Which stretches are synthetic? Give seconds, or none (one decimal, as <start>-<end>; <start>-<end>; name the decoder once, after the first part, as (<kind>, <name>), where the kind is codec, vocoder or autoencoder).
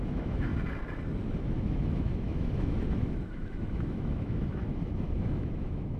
0.0-0.5 (autoencoder, DAC-VAE); 1.4-6.0